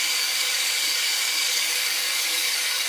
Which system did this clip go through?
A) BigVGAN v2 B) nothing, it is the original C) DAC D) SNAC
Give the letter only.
C